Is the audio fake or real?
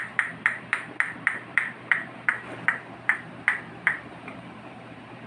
fake